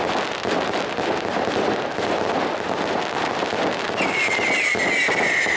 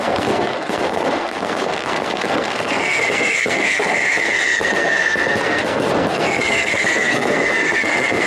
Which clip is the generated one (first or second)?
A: second